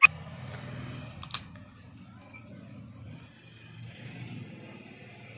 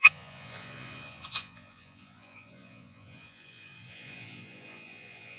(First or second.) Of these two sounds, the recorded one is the first